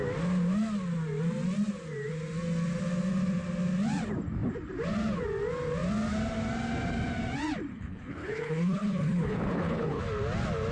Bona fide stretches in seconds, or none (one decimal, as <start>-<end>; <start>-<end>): 0.0-7.7; 10.0-10.7